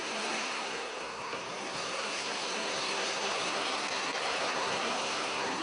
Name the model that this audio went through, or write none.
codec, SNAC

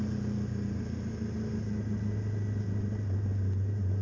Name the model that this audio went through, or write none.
none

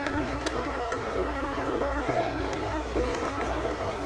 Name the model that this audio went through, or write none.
codec, SNAC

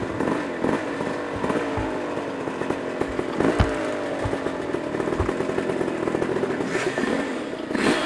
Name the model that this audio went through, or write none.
none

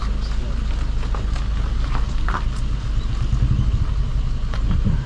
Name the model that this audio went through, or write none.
none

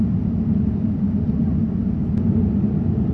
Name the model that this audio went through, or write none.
none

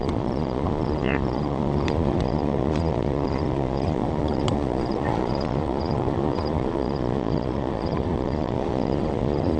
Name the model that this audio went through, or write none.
vocoder, Vocos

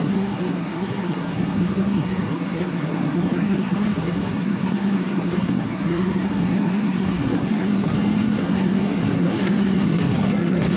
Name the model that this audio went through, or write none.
codec, SNAC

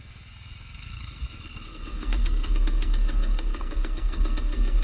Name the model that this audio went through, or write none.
codec, SNAC